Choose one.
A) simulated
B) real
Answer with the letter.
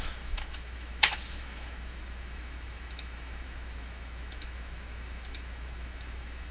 A